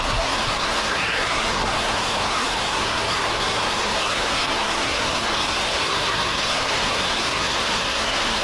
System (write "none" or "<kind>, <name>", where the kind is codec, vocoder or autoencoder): codec, SNAC